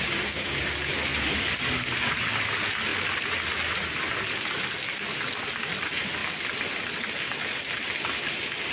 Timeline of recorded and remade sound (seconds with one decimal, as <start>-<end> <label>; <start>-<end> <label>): 0.0-1.1 recorded; 1.1-2.1 remade; 2.1-8.7 recorded